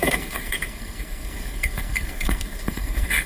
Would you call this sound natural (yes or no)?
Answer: no